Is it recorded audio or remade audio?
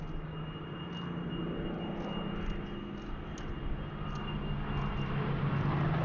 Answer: recorded